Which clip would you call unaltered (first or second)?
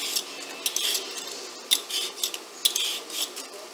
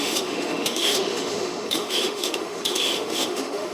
first